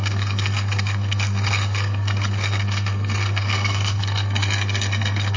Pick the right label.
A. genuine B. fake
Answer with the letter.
B